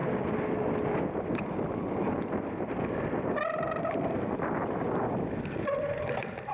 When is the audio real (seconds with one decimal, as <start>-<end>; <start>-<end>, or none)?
0.0-6.5